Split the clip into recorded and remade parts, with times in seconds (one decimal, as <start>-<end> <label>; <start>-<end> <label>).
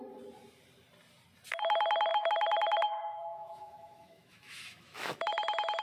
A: 0.0-2.1 recorded; 2.1-5.8 remade